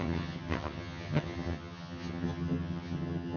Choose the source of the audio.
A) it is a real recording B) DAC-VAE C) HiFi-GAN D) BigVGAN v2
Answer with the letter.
C